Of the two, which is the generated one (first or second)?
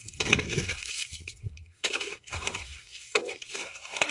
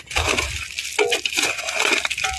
first